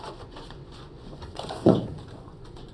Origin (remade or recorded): remade